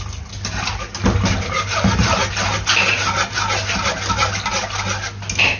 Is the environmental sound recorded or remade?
recorded